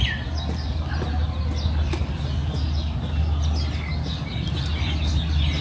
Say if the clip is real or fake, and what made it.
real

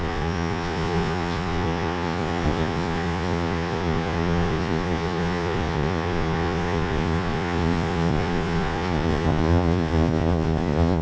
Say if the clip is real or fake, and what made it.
fake, vocoder, Vocos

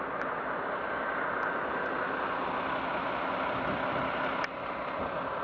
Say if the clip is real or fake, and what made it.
real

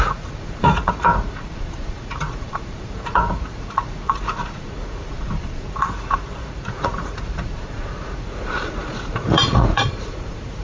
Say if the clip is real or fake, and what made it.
fake, vocoder, Vocos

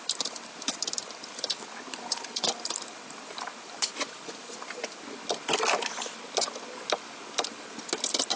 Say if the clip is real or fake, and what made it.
real